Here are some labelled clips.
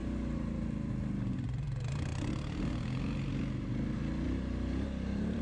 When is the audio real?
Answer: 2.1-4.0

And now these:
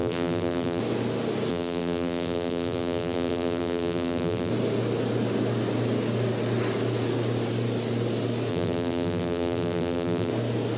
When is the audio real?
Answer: 0.8-1.5; 4.5-8.5; 10.3-10.8